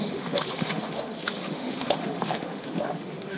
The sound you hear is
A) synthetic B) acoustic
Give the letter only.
A